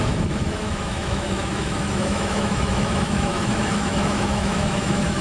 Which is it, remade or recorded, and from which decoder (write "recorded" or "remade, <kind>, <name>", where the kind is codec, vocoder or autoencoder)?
remade, autoencoder, DAC-VAE